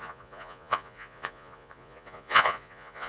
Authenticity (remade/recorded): remade